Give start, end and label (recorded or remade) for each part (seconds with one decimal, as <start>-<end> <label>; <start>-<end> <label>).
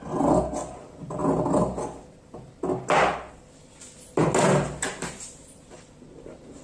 0.0-6.6 recorded